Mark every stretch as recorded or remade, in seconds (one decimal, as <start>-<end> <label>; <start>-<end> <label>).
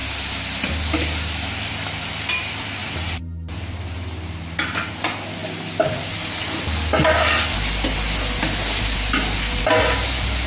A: 0.0-2.8 recorded; 2.8-4.0 remade; 4.0-10.5 recorded